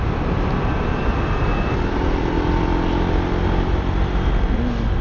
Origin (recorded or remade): recorded